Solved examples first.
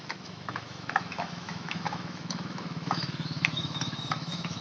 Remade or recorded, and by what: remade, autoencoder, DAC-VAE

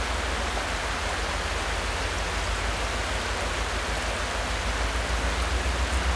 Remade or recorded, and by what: recorded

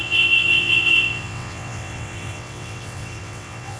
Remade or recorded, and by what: remade, vocoder, WaveNeXt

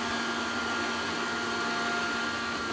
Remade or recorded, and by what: recorded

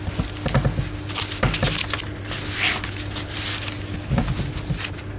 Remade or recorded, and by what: recorded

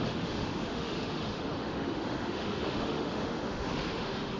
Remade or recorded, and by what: remade, autoencoder, DAC-VAE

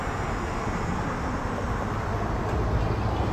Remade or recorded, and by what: recorded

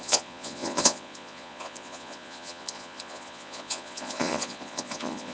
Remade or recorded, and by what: remade, vocoder, Vocos